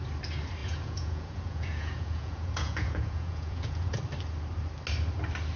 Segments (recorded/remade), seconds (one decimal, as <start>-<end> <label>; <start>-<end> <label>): 0.0-0.6 recorded; 0.6-4.0 remade; 4.0-5.6 recorded